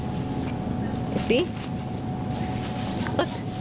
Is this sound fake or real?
real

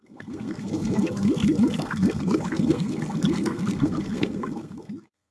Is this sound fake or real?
fake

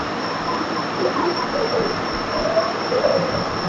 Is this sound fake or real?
real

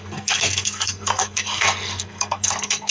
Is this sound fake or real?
fake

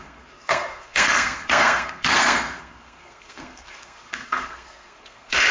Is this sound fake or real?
fake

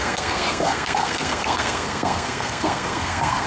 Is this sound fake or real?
fake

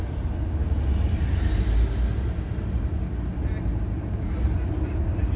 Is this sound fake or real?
real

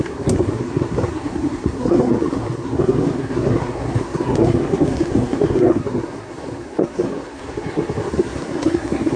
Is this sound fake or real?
fake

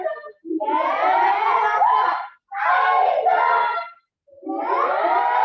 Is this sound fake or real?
real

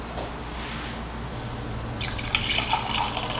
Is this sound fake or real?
real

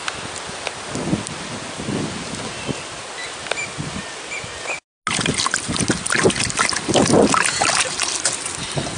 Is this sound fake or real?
real